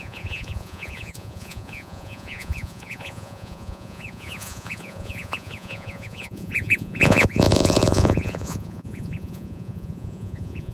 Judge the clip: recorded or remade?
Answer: remade